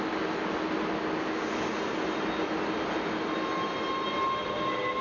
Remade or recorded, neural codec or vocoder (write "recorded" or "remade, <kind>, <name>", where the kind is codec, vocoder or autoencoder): recorded